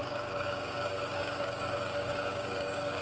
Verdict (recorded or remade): remade